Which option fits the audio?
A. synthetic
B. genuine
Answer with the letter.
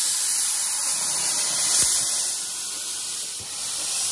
B